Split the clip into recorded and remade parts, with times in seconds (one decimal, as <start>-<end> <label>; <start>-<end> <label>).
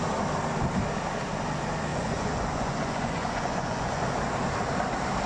0.0-1.9 recorded; 1.9-4.1 remade; 4.1-5.3 recorded